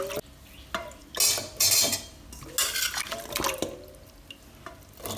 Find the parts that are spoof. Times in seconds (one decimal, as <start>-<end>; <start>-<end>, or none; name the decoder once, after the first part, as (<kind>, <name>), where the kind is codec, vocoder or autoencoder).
none